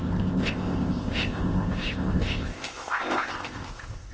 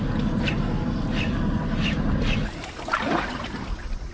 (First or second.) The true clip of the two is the second